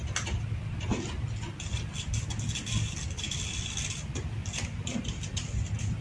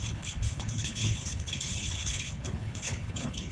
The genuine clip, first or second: first